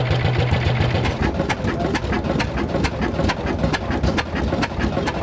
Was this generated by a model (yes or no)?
no